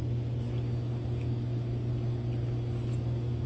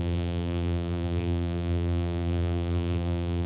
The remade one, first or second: second